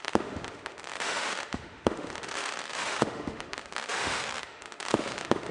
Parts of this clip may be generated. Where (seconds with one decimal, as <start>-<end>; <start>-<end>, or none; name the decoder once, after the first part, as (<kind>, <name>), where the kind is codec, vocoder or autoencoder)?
0.0-5.5 (autoencoder, DAC-VAE)